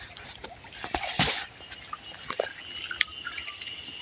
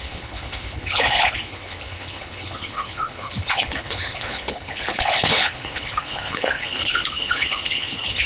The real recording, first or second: first